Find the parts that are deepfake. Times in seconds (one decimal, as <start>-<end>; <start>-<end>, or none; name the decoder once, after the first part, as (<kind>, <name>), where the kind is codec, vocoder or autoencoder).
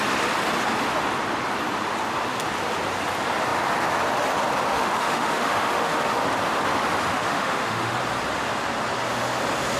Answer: 4.7-6.2 (autoencoder, DAC-VAE); 7.1-8.0